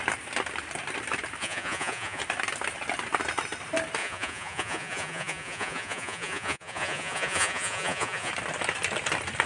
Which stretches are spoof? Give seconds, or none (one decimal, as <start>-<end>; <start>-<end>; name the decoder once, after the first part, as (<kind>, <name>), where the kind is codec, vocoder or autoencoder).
1.4-2.2 (vocoder, Vocos); 4.0-8.3

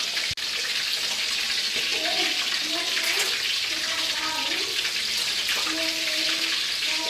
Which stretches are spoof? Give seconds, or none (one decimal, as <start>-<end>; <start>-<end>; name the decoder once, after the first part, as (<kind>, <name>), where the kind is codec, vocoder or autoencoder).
none

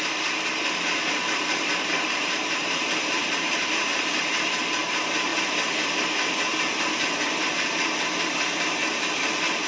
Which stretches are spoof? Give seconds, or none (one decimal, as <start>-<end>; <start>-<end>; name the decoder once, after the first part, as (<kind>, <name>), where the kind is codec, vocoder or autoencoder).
1.0-4.5 (vocoder, BigVGAN v2)

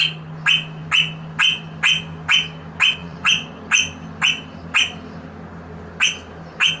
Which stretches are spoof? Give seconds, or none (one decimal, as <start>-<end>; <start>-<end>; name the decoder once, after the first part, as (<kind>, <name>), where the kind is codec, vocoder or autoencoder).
3.0-3.6 (vocoder, Vocos)